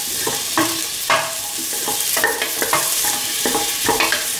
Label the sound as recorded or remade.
remade